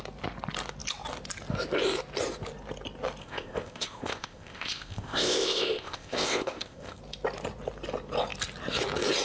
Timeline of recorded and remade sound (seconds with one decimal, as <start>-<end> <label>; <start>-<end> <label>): 0.0-3.2 recorded; 3.2-7.0 remade; 7.0-9.2 recorded